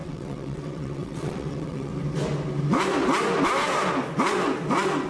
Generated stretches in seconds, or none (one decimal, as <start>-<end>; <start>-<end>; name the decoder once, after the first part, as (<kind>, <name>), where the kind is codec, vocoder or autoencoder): 0.0-1.9 (vocoder, WaveNeXt)